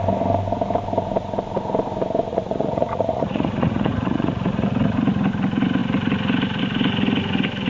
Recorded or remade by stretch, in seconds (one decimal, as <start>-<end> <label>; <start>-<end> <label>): 0.0-2.3 recorded; 2.3-5.0 remade; 5.0-7.7 recorded